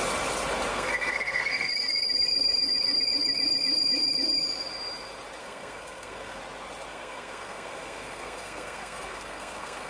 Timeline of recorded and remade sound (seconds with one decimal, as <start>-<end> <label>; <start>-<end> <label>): 0.0-0.7 recorded; 0.7-1.7 remade; 1.7-5.4 recorded; 5.4-6.4 remade; 6.4-6.9 recorded; 6.9-9.9 remade